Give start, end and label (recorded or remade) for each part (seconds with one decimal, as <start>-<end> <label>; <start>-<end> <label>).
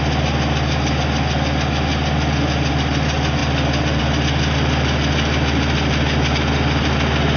0.0-7.4 recorded